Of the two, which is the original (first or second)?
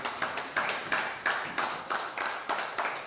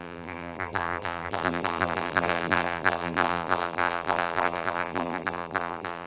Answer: first